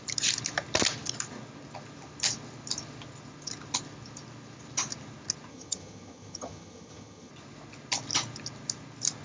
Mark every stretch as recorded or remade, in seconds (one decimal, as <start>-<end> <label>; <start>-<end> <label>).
0.0-5.5 recorded; 5.5-7.3 remade; 7.3-9.2 recorded